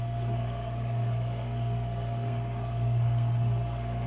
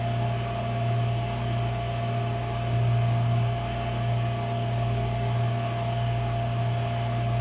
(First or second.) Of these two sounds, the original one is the second